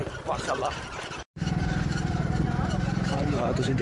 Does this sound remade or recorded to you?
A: remade